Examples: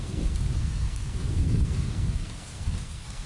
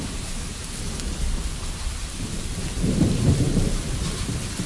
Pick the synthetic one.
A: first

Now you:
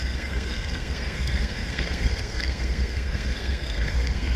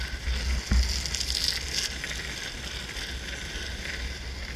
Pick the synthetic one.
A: first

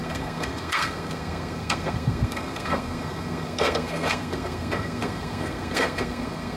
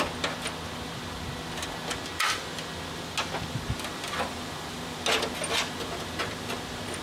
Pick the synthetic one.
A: first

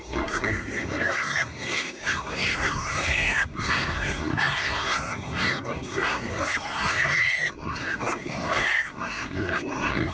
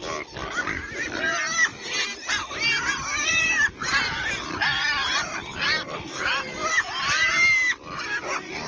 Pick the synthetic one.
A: first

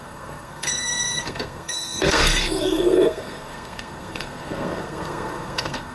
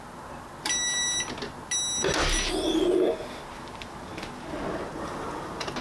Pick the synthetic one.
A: first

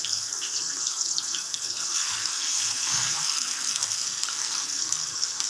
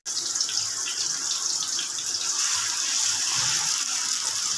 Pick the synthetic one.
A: first